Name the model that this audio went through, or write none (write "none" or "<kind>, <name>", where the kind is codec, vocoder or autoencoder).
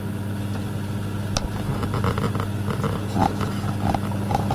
none